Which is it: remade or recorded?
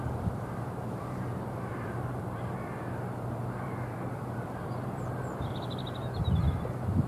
remade